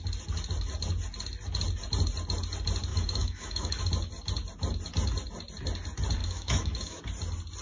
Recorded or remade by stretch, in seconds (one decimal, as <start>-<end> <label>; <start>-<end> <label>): 0.0-2.9 recorded; 2.9-3.8 remade; 3.8-6.2 recorded; 6.2-7.0 remade; 7.0-7.6 recorded